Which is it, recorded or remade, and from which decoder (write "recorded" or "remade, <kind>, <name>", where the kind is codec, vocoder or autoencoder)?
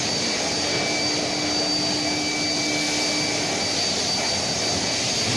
recorded